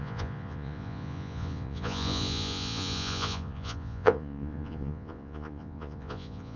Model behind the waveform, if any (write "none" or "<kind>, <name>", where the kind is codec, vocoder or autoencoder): vocoder, Vocos